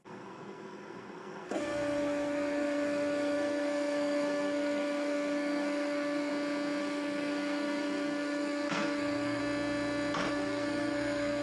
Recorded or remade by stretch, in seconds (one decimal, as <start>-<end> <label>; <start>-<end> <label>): 0.0-6.3 remade; 6.3-6.8 recorded; 6.8-9.4 remade; 9.4-10.3 recorded; 10.3-11.4 remade